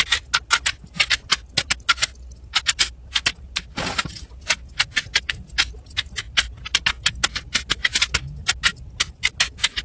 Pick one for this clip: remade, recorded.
recorded